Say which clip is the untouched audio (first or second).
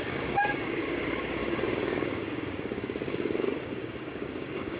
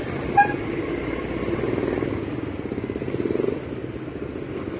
second